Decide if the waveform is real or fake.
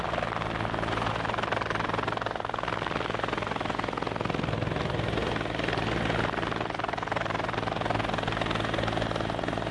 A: real